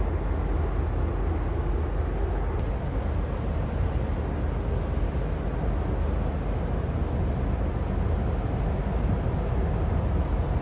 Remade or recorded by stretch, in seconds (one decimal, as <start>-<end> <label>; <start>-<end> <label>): 0.0-10.6 recorded